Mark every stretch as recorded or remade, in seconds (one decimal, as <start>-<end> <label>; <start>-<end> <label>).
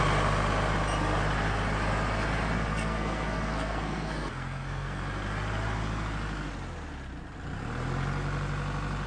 0.0-2.7 recorded; 2.7-5.0 remade; 5.0-9.1 recorded